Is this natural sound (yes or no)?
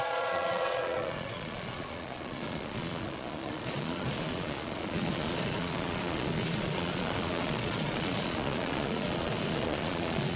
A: no